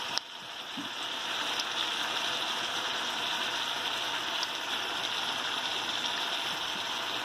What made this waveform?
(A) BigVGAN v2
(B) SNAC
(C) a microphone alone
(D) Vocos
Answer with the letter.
C